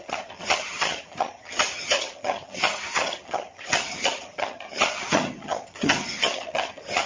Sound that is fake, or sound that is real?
fake